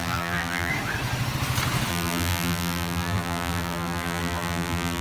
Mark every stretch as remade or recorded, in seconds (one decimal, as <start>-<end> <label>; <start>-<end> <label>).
0.0-0.7 remade; 0.7-1.9 recorded; 1.9-5.0 remade